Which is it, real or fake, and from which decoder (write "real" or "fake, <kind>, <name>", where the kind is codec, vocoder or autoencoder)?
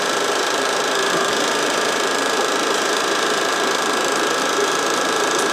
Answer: fake, vocoder, BigVGAN v2